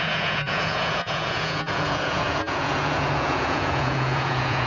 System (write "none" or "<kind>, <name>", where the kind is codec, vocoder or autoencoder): vocoder, Vocos